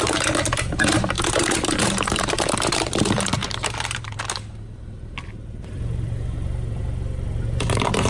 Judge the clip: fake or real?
fake